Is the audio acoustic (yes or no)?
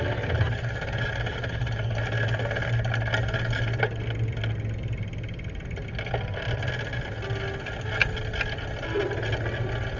yes